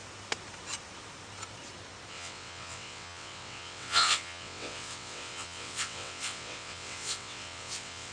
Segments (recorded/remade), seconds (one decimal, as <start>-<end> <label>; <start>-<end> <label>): 0.0-2.1 recorded; 2.1-8.1 remade